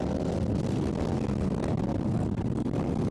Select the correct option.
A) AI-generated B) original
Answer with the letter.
B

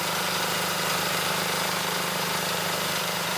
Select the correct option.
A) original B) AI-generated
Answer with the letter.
B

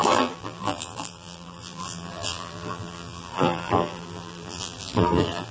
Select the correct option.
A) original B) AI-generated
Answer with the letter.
B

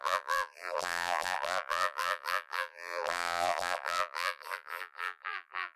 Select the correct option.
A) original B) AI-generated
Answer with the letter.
B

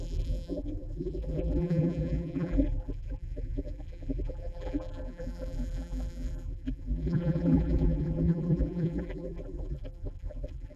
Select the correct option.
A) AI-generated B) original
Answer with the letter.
A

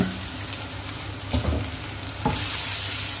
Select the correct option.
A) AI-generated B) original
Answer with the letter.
B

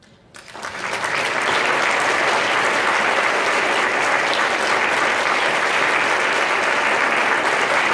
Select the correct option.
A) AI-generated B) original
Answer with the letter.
B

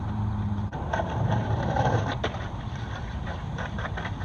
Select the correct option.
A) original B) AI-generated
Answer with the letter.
B